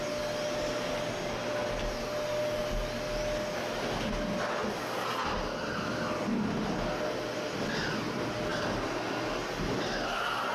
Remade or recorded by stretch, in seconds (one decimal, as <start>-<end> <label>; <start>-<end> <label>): 0.0-10.5 recorded